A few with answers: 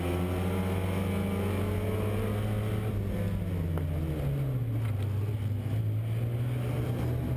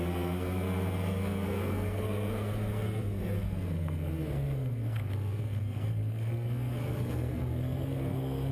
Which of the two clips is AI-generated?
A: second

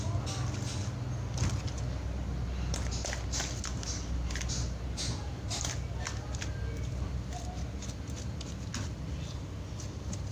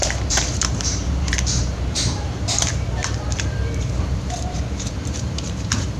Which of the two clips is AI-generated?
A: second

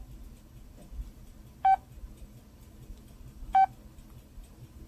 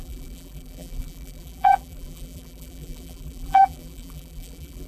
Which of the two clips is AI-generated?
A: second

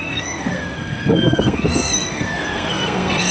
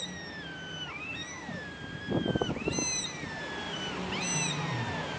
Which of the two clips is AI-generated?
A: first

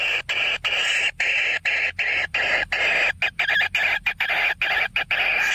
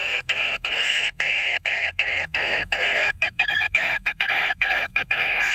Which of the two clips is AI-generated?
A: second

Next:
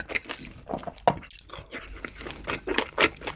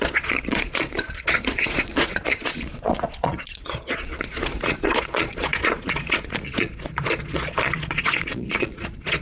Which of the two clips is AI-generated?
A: second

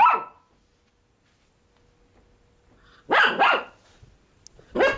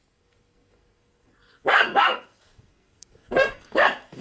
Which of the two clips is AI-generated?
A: second